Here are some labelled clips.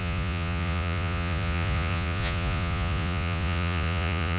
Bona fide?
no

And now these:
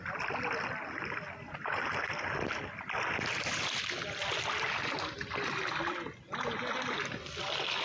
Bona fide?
yes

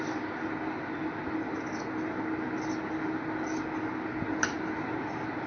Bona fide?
yes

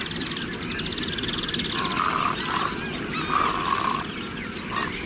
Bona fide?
yes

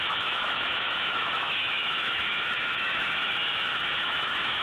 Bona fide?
no